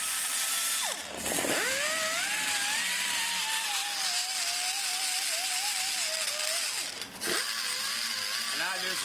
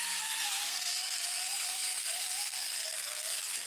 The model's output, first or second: second